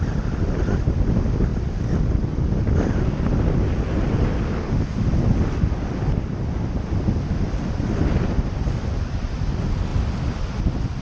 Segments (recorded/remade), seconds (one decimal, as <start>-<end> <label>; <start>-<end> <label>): 0.0-11.0 recorded